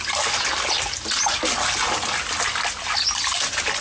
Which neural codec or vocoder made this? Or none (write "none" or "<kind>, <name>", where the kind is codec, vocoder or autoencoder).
none